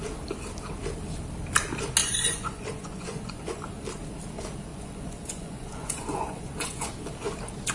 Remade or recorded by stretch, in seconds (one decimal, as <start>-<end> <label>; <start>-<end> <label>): 0.0-2.0 recorded; 2.0-3.6 remade; 3.6-4.7 recorded; 4.7-6.9 remade; 6.9-7.7 recorded